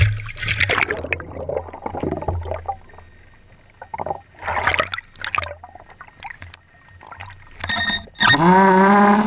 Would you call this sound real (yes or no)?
yes